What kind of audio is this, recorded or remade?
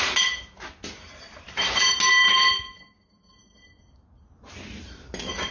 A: recorded